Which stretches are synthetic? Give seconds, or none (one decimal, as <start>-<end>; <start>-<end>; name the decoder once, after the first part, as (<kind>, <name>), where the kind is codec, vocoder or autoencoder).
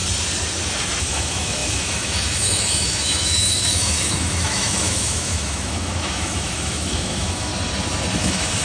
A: 1.0-7.5 (autoencoder, DAC-VAE); 8.2-8.6